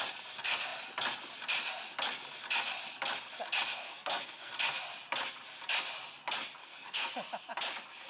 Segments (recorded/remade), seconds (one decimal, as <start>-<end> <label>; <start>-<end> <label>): 0.0-3.7 recorded; 3.7-4.5 remade; 4.5-6.6 recorded; 6.6-7.1 remade; 7.1-8.1 recorded